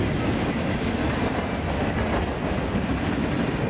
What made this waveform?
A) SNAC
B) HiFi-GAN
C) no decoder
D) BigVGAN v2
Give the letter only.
C